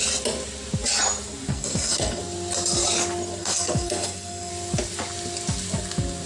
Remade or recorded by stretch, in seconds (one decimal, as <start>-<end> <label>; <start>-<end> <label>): 0.0-1.5 recorded; 1.5-2.2 remade; 2.2-3.4 recorded; 3.4-4.5 remade; 4.5-6.3 recorded